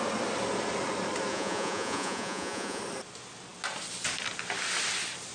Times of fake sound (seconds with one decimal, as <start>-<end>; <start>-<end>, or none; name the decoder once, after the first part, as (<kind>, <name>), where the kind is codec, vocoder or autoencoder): 1.3-2.8 (vocoder, Vocos)